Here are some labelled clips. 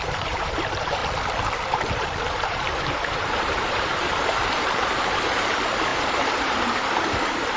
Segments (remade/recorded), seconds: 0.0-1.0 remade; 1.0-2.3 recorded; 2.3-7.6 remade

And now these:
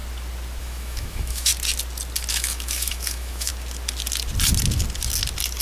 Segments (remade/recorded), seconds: 0.0-0.6 recorded; 0.6-1.5 remade; 1.5-2.3 recorded; 2.3-3.5 remade; 3.5-5.6 recorded

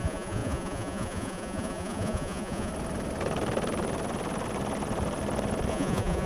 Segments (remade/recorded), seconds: 0.0-2.7 remade; 2.7-5.7 recorded; 5.7-6.3 remade

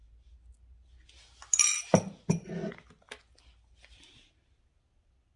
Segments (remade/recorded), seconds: 0.0-5.4 recorded

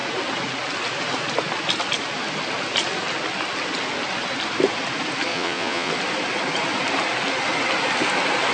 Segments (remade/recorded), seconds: 0.0-5.3 recorded; 5.3-5.9 remade; 5.9-8.5 recorded

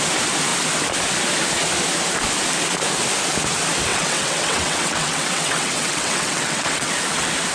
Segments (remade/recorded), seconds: 0.0-3.9 recorded; 3.9-6.9 remade; 6.9-7.5 recorded

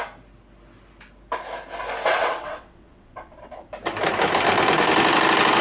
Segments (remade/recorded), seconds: 0.0-2.1 recorded; 2.1-3.7 remade; 3.7-5.6 recorded

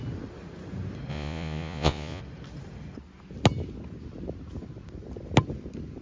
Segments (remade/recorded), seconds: 0.0-1.1 recorded; 1.1-2.2 remade; 2.2-6.0 recorded